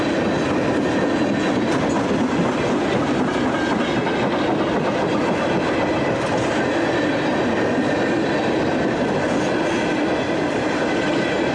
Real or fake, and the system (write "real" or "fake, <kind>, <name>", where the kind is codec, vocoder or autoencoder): real